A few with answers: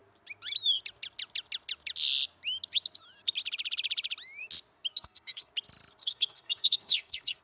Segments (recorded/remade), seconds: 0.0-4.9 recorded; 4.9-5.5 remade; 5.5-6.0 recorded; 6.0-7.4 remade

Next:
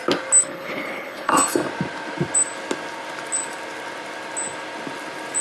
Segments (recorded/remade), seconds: 0.0-0.4 recorded; 0.4-1.3 remade; 1.3-5.4 recorded

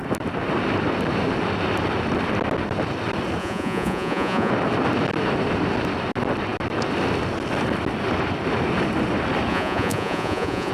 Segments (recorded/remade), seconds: 0.0-3.4 recorded; 3.4-4.5 remade; 4.5-9.5 recorded; 9.5-10.7 remade

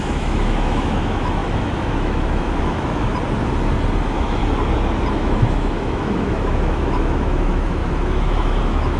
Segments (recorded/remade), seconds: 0.0-3.1 remade; 3.1-4.0 recorded; 4.0-4.4 remade; 4.4-5.1 recorded; 5.1-9.0 remade

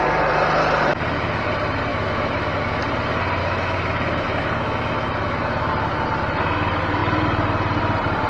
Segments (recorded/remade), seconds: 0.0-0.9 recorded; 0.9-1.5 remade; 1.5-1.9 recorded; 1.9-2.8 remade; 2.8-3.4 recorded; 3.4-5.7 remade; 5.7-8.3 recorded

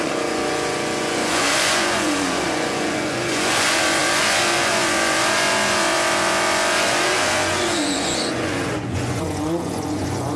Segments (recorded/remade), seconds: 0.0-10.4 remade